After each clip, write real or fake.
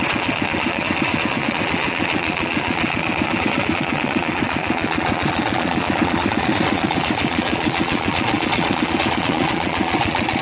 fake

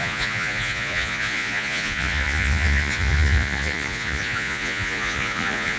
fake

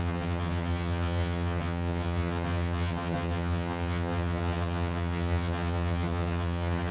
fake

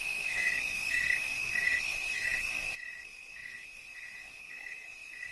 fake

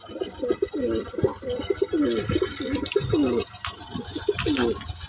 real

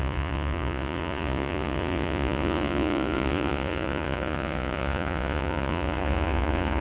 fake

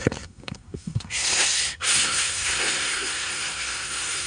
fake